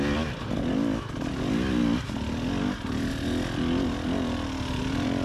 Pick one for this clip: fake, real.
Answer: real